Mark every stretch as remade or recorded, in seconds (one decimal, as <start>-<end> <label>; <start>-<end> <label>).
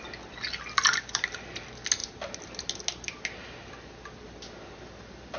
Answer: 0.0-5.4 recorded